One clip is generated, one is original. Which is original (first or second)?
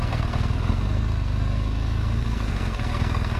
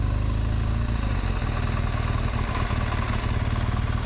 second